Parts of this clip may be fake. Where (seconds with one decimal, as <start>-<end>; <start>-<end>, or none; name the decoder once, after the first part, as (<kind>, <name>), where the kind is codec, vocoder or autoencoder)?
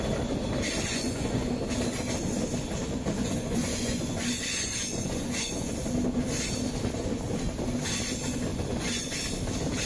0.9-1.5 (vocoder, Vocos); 3.2-5.7; 8.5-9.2